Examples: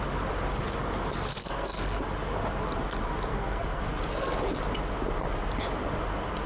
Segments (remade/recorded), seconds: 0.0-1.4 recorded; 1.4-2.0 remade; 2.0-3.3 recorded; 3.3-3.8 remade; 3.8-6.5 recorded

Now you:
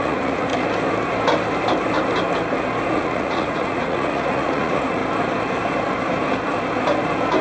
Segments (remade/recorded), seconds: 0.0-0.5 remade; 0.5-2.9 recorded; 2.9-5.0 remade; 5.0-7.4 recorded